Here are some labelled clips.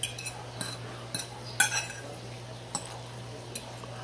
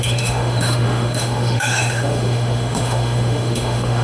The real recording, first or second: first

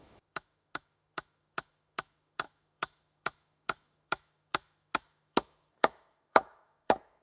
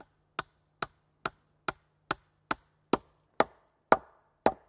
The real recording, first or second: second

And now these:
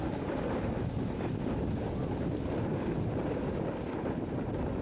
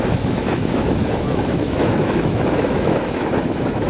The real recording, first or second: first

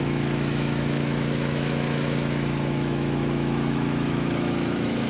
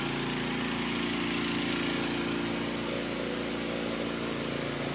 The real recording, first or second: second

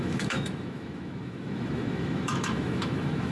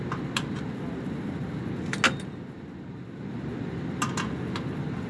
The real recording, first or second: second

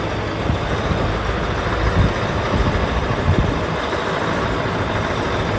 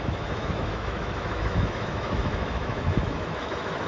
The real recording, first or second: first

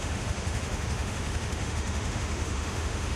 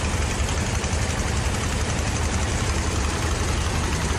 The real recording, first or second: second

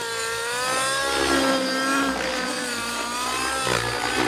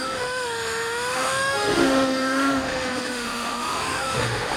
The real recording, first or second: first